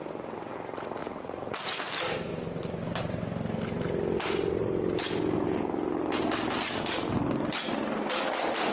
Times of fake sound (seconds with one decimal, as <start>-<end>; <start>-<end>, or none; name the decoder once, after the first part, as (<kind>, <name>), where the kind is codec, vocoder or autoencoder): 1.0-1.9 (vocoder, Vocos)